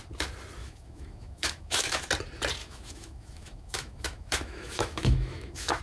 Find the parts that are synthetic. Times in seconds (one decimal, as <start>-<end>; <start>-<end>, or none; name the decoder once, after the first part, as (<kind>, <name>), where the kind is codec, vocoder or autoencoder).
0.6-2.0 (autoencoder, DAC-VAE); 2.6-5.8